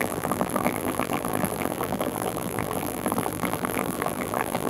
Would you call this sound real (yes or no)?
no